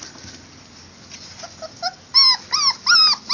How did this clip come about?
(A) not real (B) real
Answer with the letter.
B